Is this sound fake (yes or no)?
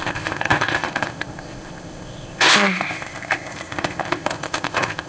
yes